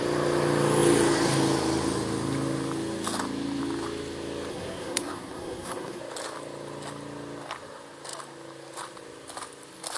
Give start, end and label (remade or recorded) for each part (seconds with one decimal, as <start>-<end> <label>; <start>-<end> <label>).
0.0-4.5 recorded; 4.5-6.0 remade; 6.0-10.0 recorded